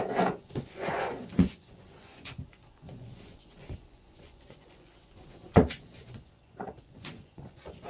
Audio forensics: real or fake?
fake